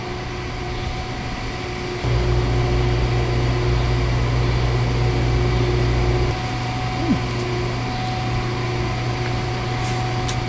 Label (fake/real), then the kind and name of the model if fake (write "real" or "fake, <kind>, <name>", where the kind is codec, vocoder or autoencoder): real